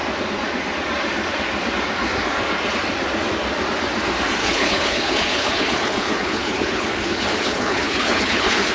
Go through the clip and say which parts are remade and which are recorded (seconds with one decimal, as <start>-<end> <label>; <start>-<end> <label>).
0.0-4.4 recorded; 4.4-8.7 remade